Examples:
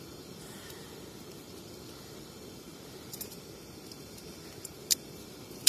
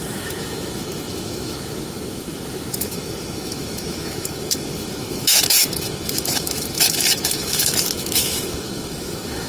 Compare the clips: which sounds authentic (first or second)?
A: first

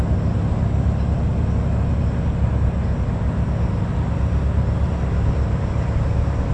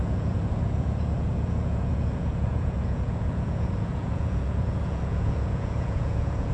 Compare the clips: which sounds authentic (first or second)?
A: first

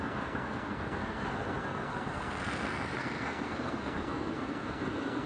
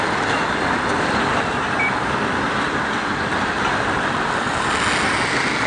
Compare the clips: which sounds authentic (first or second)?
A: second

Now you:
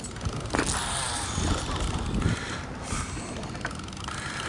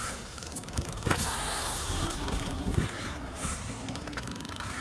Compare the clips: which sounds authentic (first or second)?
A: first